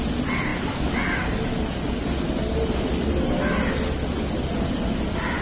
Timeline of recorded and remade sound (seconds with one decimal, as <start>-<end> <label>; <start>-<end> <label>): 0.0-5.4 recorded